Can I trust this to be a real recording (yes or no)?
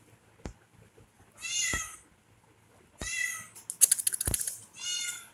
yes